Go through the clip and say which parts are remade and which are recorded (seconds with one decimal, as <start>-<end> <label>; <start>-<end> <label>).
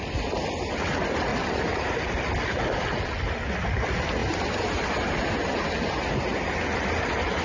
0.0-1.3 recorded; 1.3-3.2 remade; 3.2-7.4 recorded